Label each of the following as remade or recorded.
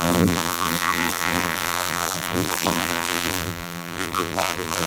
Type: remade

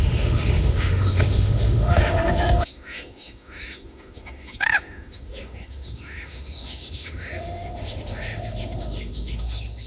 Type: remade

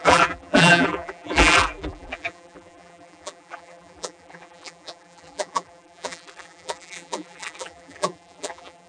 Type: remade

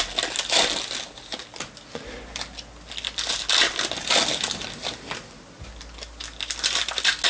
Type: recorded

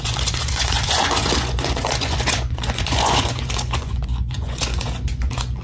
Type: remade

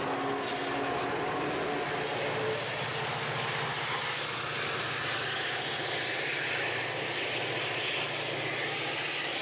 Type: recorded